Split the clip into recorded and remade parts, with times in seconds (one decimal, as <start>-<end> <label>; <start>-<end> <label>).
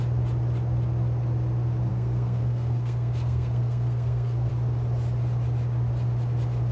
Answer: 0.0-1.9 recorded; 1.9-4.5 remade; 4.5-6.7 recorded